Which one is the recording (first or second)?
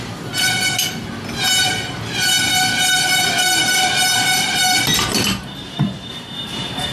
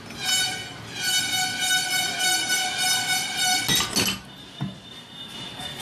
second